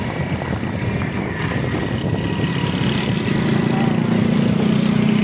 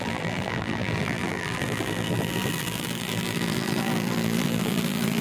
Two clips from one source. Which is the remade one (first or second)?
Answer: second